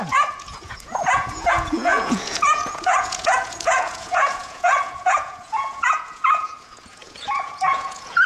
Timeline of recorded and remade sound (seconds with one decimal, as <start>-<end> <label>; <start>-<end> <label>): 0.0-8.3 remade